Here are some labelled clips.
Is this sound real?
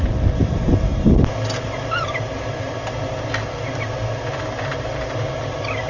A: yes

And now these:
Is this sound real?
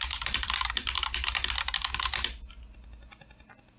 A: yes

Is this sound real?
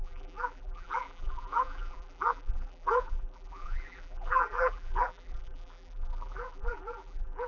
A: no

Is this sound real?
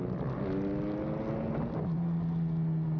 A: yes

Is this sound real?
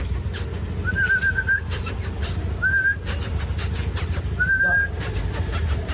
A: yes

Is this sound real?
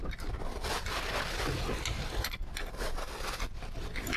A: no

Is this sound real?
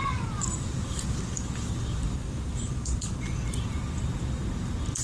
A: no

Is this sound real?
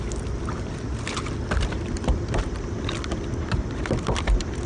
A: no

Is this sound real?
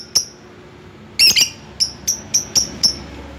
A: yes